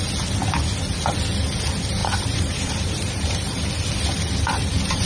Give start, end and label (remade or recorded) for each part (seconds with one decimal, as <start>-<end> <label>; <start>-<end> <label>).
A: 0.0-2.0 recorded; 2.0-3.7 remade; 3.7-4.6 recorded; 4.6-5.1 remade